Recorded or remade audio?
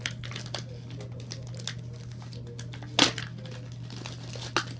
recorded